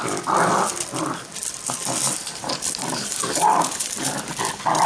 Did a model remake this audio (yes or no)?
no